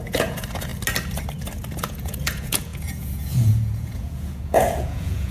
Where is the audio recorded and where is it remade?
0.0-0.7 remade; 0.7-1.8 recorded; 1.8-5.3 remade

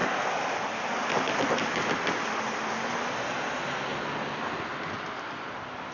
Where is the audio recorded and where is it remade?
0.0-5.9 recorded